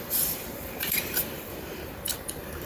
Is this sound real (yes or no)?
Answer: no